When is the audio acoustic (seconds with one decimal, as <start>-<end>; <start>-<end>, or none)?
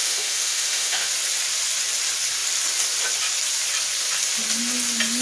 1.1-5.2